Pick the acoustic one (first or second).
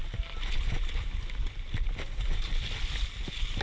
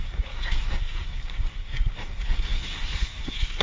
first